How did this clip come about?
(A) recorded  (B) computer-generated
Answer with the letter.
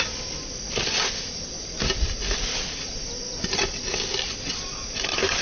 A